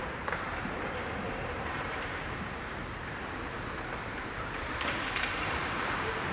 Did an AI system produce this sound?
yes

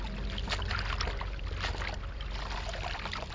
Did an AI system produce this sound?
no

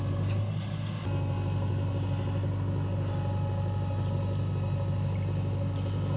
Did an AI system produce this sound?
no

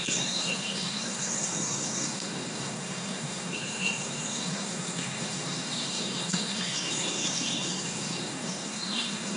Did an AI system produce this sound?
yes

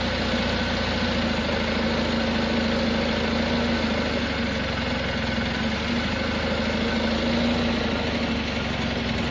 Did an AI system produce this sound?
no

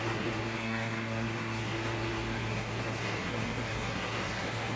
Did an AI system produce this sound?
yes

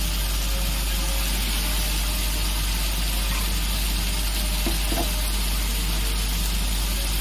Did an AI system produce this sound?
no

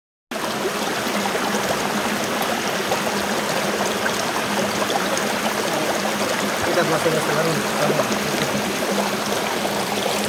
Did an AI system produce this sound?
no